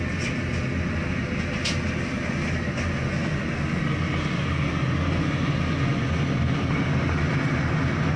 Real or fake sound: real